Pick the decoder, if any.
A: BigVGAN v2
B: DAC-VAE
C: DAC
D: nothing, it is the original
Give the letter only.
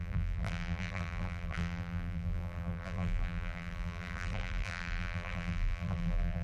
A